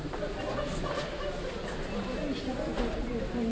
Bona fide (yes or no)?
yes